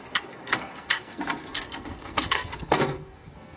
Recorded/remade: remade